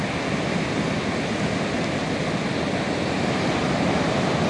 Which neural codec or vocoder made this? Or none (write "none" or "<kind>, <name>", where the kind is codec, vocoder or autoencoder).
none